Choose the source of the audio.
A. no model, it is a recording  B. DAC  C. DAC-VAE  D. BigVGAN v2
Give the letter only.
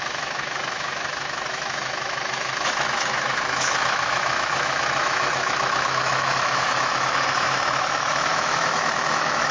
C